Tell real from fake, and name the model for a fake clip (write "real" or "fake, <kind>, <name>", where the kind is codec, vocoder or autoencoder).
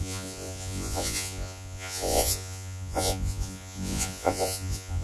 fake, vocoder, Vocos